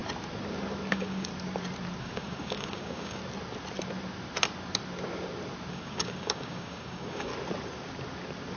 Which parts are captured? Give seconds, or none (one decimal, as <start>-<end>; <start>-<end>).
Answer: 0.0-0.9; 1.3-2.0; 3.2-5.7; 7.3-8.6